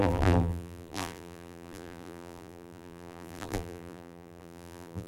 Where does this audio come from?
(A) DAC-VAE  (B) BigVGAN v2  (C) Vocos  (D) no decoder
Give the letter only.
B